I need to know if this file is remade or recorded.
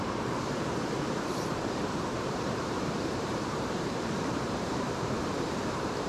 remade